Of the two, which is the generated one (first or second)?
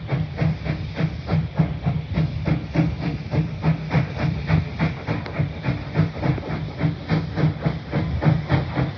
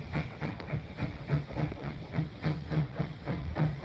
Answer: second